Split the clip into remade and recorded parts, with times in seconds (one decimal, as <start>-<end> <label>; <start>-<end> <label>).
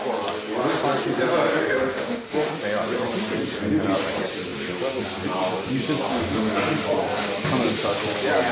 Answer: 0.0-1.5 recorded; 1.5-2.5 remade; 2.5-6.1 recorded; 6.1-6.6 remade; 6.6-8.5 recorded